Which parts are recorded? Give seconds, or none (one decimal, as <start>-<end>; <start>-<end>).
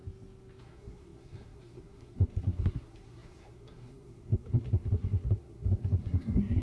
0.0-0.6